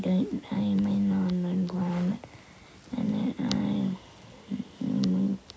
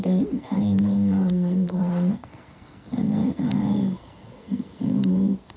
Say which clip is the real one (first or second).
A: first